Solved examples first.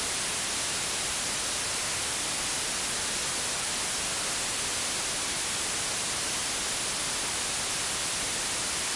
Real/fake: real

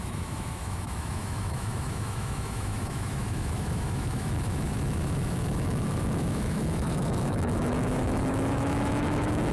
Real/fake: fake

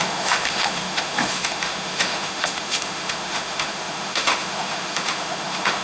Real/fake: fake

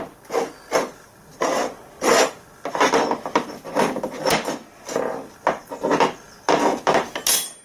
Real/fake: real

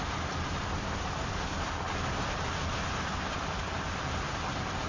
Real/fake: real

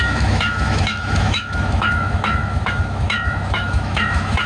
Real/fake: fake